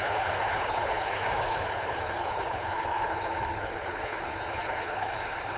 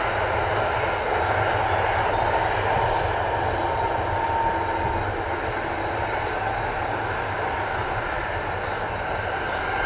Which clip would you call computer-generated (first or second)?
first